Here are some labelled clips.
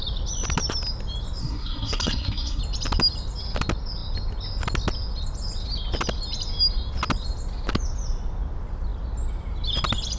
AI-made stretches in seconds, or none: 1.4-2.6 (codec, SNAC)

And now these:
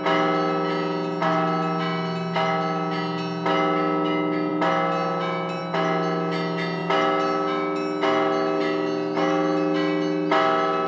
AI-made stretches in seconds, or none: none

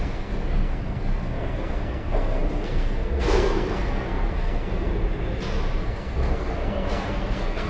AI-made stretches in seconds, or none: 0.0-4.9 (codec, SNAC); 5.8-7.7

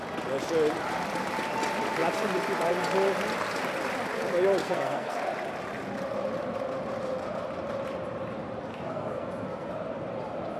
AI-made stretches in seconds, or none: 4.6-5.2 (codec, SNAC); 8.7-9.7

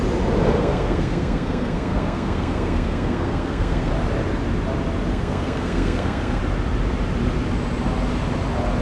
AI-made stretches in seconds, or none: 0.6-3.9 (codec, SNAC); 5.1-6.4

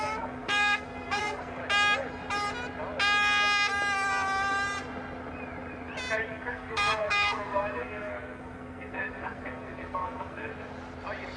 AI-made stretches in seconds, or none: 0.0-1.6 (codec, SNAC); 6.3-10.5